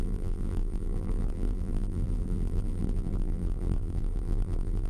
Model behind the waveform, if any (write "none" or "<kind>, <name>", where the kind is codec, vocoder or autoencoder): vocoder, BigVGAN v2